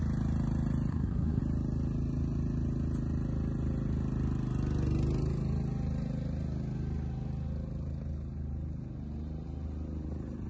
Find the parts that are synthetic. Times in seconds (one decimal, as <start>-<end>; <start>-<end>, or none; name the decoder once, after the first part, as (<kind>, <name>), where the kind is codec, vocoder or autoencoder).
0.9-1.4 (codec, SNAC)